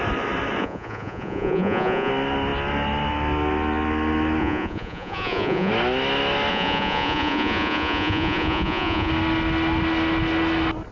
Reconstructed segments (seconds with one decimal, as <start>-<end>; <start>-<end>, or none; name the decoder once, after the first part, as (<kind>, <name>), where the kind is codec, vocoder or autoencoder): 0.6-2.1 (vocoder, Vocos); 4.4-5.7; 6.5-9.1